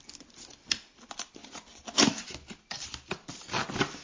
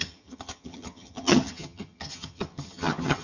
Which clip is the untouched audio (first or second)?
first